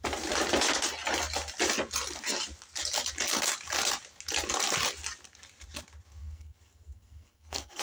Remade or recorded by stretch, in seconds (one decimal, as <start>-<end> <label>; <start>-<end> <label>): 0.0-6.2 recorded; 6.2-7.8 remade